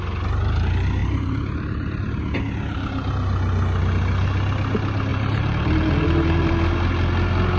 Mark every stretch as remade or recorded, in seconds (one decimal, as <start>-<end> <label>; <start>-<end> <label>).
0.0-1.0 recorded; 1.0-2.0 remade; 2.0-5.1 recorded; 5.1-6.5 remade; 6.5-7.6 recorded